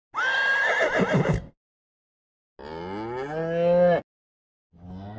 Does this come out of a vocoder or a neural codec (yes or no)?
no